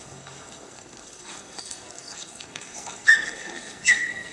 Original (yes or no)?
no